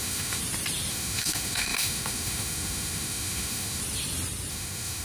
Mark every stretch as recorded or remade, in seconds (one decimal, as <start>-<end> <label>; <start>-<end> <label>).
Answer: 0.0-0.4 remade; 0.4-0.9 recorded; 0.9-3.8 remade; 3.8-4.5 recorded; 4.5-5.0 remade